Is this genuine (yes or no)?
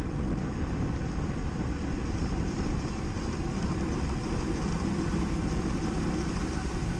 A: yes